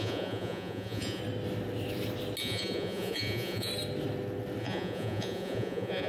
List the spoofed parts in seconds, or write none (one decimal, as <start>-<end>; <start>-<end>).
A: 0.0-1.2; 2.4-3.7; 4.6-6.1